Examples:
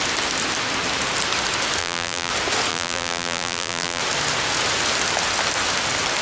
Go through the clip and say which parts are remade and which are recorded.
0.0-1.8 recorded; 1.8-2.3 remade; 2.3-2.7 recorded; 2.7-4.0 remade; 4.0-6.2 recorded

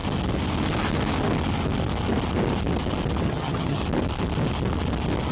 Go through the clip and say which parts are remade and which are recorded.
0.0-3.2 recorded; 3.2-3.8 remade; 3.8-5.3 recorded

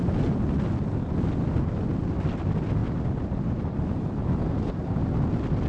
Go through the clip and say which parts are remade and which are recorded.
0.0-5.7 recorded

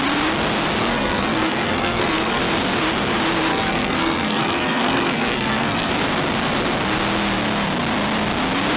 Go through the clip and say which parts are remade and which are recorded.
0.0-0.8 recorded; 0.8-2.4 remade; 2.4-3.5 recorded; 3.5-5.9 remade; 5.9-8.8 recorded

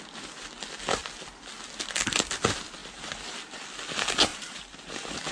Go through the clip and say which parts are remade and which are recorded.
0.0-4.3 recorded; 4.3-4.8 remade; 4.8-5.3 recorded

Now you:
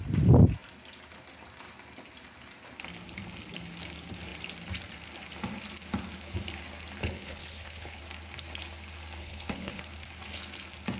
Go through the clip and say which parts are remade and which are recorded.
0.0-7.0 recorded; 7.0-8.0 remade; 8.0-9.2 recorded; 9.2-9.8 remade; 9.8-11.0 recorded